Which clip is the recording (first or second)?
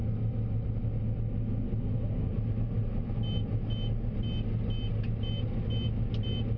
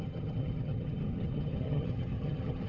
first